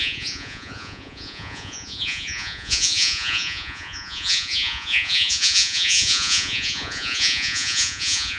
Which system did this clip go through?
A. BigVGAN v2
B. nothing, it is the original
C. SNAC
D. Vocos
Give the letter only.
D